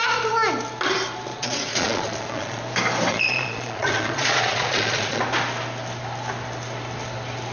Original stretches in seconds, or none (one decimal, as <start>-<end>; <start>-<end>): 0.0-1.3; 2.6-3.1; 5.2-7.5